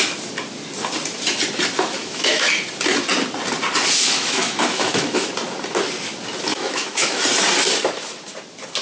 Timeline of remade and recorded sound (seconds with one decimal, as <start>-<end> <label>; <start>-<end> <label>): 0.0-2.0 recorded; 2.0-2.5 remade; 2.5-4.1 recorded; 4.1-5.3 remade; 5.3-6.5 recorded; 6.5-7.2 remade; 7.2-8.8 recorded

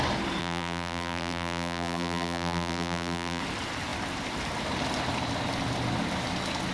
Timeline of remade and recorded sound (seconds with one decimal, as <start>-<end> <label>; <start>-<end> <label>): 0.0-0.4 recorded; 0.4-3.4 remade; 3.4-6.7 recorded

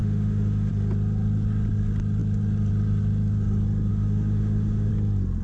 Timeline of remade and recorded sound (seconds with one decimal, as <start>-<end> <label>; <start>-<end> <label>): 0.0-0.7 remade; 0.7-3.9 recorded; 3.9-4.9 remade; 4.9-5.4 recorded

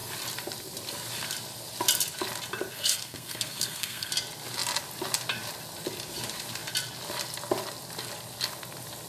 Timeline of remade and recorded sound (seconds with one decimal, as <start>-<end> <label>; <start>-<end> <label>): 0.0-2.7 recorded; 2.7-4.1 remade; 4.1-9.1 recorded

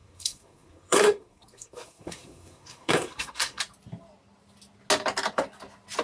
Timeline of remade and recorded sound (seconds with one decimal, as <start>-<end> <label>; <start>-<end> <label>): 0.0-3.6 remade; 3.6-6.0 recorded

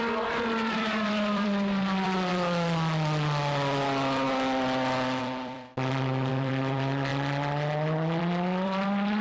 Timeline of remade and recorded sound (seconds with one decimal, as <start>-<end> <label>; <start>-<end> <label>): 0.0-2.3 remade; 2.3-5.2 recorded; 5.2-5.7 remade; 5.7-6.3 recorded; 6.3-7.1 remade; 7.1-8.2 recorded; 8.2-9.2 remade

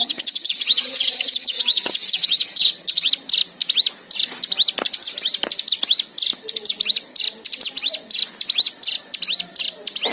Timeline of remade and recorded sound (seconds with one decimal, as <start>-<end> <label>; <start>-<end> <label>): 0.0-3.1 remade; 3.1-10.1 recorded

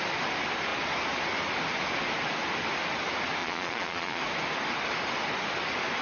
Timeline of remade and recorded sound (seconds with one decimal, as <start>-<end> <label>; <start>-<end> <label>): 0.0-3.4 recorded; 3.4-4.2 remade; 4.2-6.0 recorded